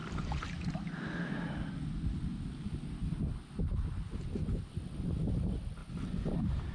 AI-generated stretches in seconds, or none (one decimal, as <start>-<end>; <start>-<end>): none